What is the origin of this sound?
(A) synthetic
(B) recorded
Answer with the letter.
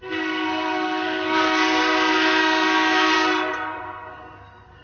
A